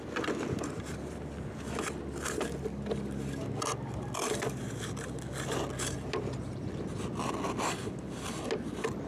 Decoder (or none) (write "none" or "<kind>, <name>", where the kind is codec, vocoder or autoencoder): none